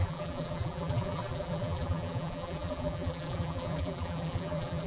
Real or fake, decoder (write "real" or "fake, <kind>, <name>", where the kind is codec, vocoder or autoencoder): fake, vocoder, BigVGAN v2